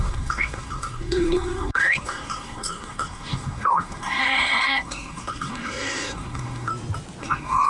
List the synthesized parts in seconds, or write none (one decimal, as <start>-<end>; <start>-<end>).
0.0-6.7; 7.2-7.7